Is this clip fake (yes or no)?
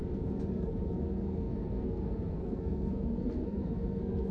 yes